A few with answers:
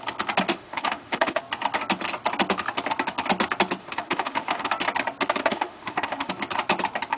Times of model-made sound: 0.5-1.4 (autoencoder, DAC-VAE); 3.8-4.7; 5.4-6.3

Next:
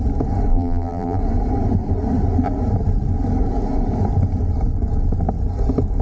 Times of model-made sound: 0.5-1.2 (vocoder, BigVGAN v2)

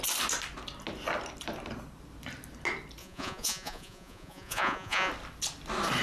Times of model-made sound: 3.0-5.1 (vocoder, Vocos)

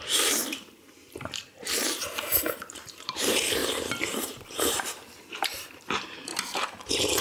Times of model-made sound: 0.0-3.6 (vocoder, BigVGAN v2); 4.2-6.3